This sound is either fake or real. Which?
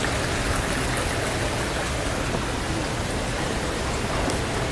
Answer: real